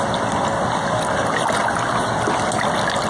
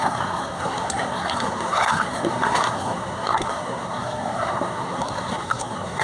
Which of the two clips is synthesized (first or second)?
second